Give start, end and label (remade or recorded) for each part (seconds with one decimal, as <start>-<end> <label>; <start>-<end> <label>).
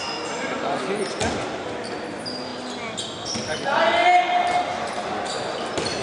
0.0-6.0 recorded